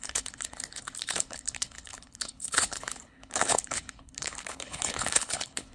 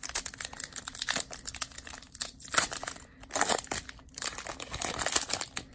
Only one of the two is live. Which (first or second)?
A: second